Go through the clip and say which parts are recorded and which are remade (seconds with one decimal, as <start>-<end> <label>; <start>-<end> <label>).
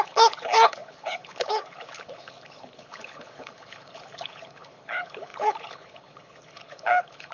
0.0-7.3 remade